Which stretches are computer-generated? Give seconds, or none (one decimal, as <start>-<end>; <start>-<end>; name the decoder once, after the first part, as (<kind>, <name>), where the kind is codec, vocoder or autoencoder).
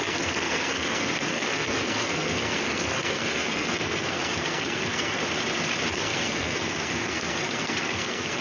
0.0-5.2 (codec, SNAC); 5.9-8.4